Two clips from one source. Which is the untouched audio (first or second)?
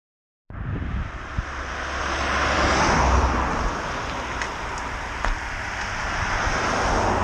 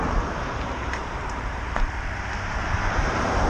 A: first